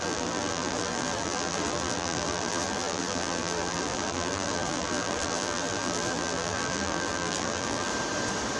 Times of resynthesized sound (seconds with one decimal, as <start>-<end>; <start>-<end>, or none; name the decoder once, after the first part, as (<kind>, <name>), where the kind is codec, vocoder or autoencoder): 0.0-7.9 (vocoder, BigVGAN v2)